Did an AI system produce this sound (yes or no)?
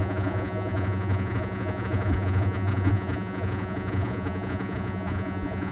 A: yes